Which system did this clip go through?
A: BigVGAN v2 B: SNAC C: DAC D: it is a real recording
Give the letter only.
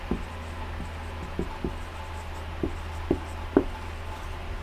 D